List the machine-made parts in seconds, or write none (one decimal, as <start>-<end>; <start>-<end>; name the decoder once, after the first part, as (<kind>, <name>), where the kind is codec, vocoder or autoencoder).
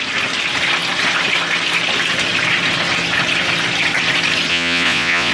4.5-5.3 (vocoder, Vocos)